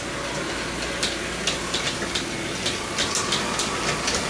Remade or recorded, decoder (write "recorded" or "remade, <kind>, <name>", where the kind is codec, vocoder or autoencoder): recorded